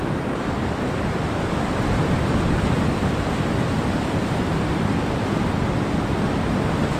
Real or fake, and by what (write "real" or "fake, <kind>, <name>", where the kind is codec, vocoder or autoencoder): real